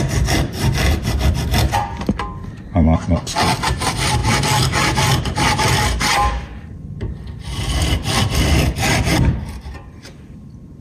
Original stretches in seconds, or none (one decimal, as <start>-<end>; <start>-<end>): 4.2-5.2